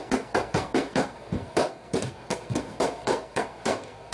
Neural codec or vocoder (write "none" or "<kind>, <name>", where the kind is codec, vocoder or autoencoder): codec, SNAC